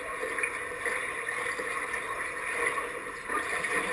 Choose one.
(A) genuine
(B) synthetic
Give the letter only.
A